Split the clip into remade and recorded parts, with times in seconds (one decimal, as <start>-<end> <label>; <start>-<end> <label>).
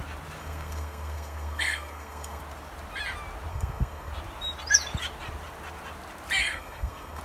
0.0-0.4 recorded; 0.4-2.4 remade; 2.4-3.5 recorded; 3.5-4.1 remade; 4.1-6.4 recorded; 6.4-7.2 remade